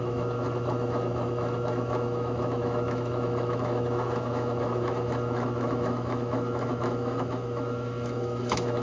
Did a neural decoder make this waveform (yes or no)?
yes